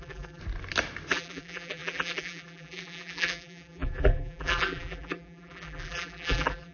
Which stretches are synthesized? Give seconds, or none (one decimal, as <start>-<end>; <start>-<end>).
0.0-0.4; 1.1-6.7